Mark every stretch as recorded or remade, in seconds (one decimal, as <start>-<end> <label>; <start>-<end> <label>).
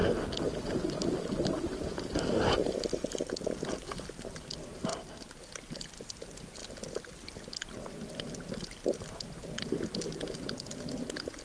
0.0-11.4 recorded